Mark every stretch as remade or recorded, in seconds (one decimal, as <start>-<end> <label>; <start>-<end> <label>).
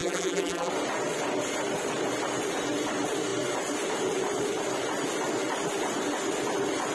0.0-0.7 remade; 0.7-6.9 recorded